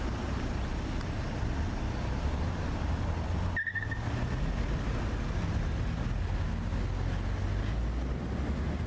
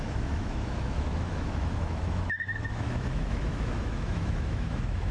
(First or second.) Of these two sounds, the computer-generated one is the second